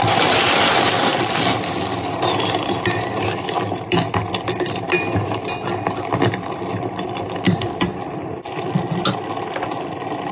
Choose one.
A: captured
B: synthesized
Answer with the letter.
A